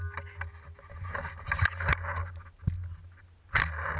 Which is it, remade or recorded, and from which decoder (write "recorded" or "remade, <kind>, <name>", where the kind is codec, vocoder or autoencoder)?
recorded